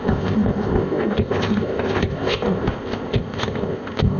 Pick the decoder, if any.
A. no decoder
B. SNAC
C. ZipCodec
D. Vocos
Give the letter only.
C